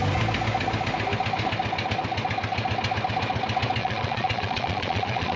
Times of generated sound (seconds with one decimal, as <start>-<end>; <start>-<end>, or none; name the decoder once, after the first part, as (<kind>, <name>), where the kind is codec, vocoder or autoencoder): 3.8-5.4 (vocoder, Vocos)